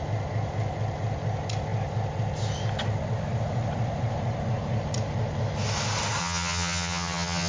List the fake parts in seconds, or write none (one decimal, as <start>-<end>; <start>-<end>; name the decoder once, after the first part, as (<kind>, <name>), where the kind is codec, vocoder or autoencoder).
6.2-7.5 (vocoder, HiFi-GAN)